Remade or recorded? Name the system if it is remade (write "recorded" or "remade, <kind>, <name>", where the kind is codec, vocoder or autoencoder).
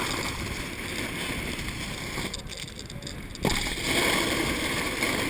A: recorded